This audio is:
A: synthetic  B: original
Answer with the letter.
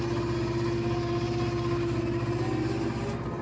B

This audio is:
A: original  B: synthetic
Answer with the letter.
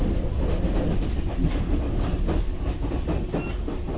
A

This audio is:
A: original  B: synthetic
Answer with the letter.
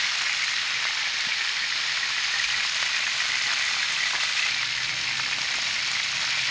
A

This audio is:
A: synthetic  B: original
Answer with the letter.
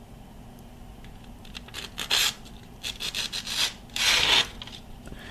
B